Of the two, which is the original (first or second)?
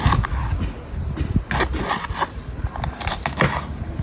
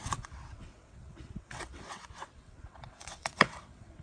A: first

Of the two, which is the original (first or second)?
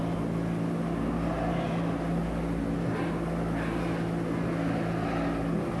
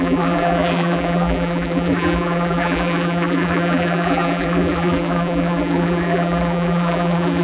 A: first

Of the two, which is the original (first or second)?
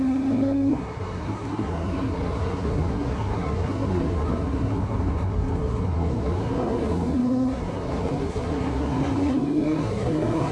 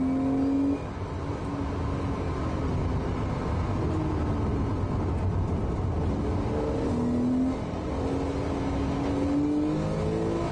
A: second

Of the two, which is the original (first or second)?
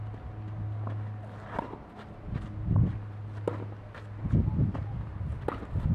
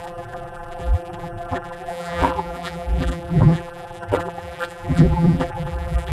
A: first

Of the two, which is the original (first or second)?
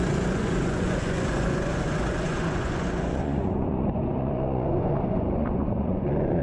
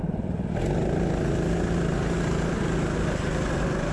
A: second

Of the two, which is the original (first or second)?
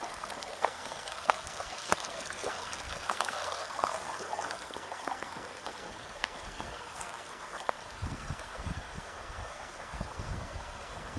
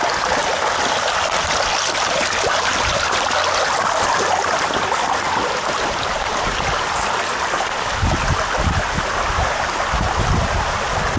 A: second